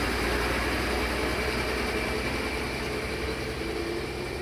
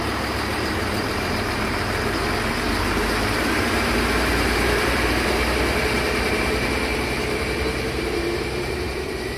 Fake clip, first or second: second